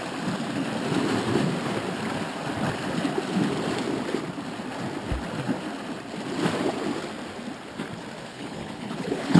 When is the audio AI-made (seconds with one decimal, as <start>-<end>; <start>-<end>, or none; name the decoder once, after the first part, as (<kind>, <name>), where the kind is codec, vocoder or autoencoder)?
8.3-9.4 (codec, HILCodec)